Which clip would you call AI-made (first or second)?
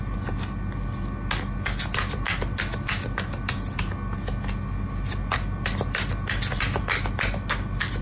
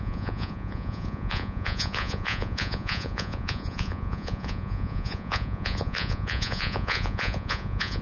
second